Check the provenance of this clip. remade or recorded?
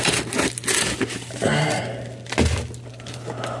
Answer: recorded